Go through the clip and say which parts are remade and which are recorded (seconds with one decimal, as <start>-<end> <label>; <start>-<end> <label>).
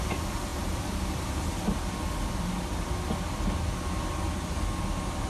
0.0-0.5 recorded; 0.5-1.6 remade; 1.6-5.3 recorded